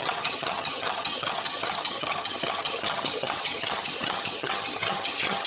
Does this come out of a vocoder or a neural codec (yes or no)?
yes